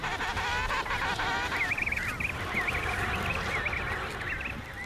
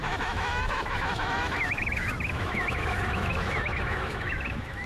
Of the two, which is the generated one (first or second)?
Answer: second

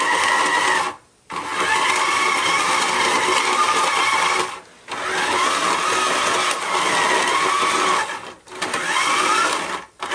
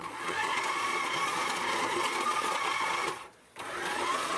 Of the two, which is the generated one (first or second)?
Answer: second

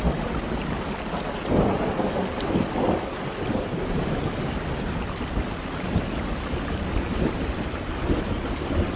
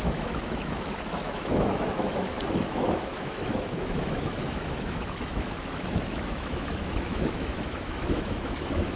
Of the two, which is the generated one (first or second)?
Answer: second